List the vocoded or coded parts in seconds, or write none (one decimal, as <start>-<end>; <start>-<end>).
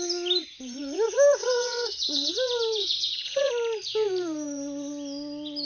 1.4-2.3; 2.8-3.5